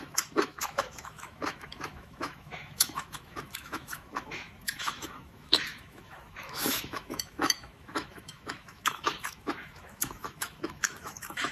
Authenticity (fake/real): fake